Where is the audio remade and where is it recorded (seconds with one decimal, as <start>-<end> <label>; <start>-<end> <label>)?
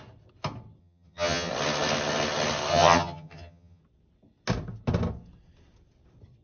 0.0-0.8 recorded; 0.8-1.5 remade; 1.5-2.7 recorded; 2.7-3.8 remade; 3.8-6.4 recorded